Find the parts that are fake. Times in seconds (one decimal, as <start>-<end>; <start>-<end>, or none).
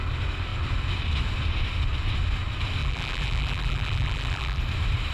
2.8-4.6